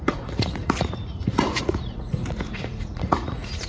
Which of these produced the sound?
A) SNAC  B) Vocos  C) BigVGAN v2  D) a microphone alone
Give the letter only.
B